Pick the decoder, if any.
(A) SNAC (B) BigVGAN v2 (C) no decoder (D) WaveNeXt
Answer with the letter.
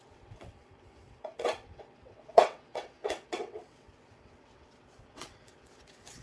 D